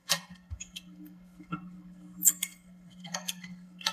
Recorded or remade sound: remade